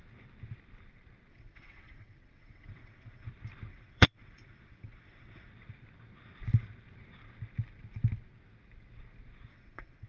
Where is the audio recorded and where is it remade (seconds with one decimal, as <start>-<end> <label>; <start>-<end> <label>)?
0.0-1.3 recorded; 1.3-3.3 remade; 3.3-3.7 recorded; 3.7-5.5 remade; 5.5-9.5 recorded; 9.5-10.1 remade